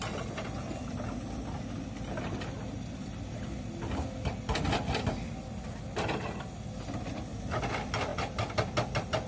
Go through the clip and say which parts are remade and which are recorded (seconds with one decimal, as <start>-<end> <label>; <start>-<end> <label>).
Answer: 0.0-9.3 recorded